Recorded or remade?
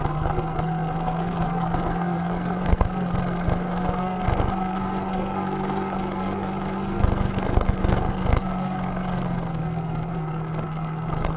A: remade